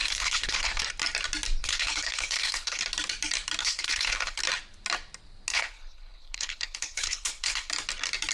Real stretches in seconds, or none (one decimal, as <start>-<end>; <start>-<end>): 0.8-1.6; 2.8-3.6; 4.4-5.5; 7.7-8.3